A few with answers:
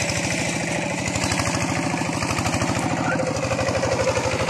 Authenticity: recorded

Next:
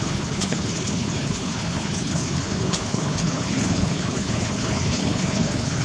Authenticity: remade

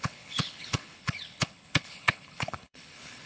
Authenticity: remade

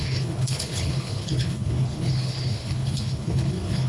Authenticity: remade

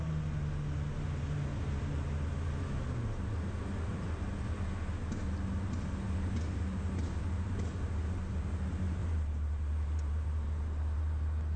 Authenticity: recorded